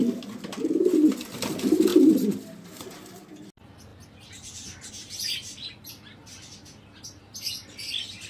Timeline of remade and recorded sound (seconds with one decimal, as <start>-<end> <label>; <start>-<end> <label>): 0.0-8.3 recorded